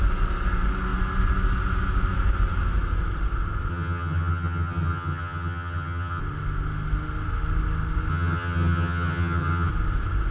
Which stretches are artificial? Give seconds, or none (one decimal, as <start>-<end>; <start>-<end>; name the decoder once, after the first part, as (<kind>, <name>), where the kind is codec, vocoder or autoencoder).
3.7-6.2 (vocoder, HiFi-GAN); 8.1-9.7